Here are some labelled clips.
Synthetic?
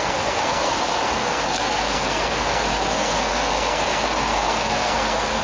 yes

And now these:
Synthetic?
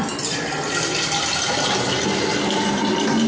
no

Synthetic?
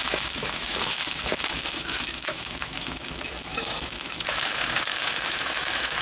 yes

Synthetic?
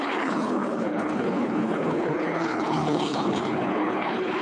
yes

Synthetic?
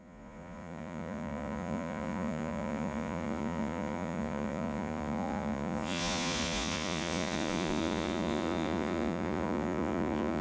yes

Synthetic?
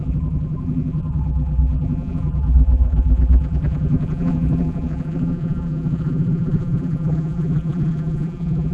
yes